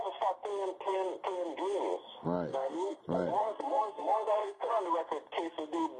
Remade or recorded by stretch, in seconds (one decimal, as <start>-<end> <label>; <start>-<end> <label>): 0.0-2.5 recorded; 2.5-3.0 remade; 3.0-3.4 recorded; 3.4-4.8 remade; 4.8-6.0 recorded